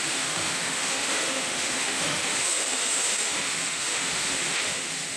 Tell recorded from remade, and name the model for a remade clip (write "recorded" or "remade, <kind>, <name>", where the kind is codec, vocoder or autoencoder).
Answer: remade, autoencoder, DAC-VAE